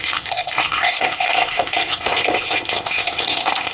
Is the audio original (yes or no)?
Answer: no